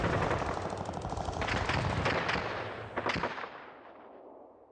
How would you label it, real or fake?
real